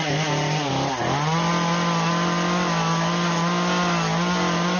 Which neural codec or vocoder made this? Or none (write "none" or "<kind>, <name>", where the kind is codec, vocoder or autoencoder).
none